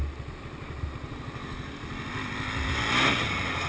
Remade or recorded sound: recorded